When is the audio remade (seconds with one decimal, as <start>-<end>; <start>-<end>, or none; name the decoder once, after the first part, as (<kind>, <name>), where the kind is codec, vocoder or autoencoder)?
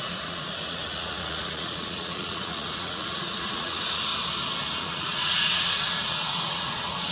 0.0-4.1 (vocoder, Vocos); 4.8-7.1